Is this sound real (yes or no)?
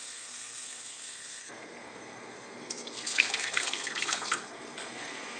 no